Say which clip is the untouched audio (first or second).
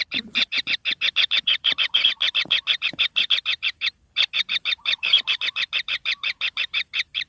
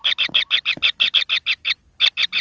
second